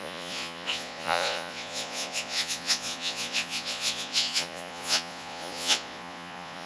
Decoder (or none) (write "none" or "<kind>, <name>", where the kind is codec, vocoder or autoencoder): vocoder, Vocos